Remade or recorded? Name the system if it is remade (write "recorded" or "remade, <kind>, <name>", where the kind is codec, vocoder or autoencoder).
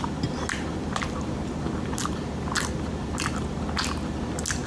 recorded